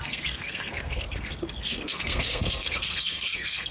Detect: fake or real fake